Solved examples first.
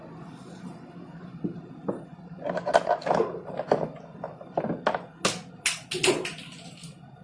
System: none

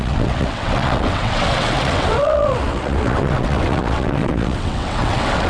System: vocoder, WaveNeXt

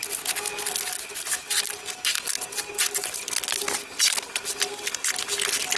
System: none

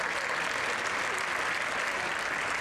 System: none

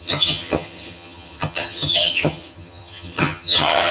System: vocoder, HiFi-GAN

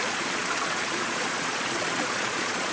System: vocoder, Vocos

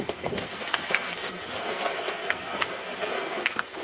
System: codec, SNAC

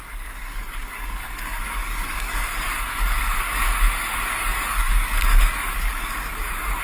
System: codec, DAC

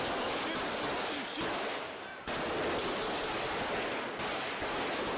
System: none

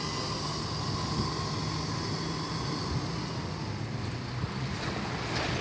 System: none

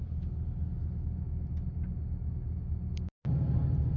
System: none